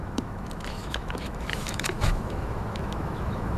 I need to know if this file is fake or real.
fake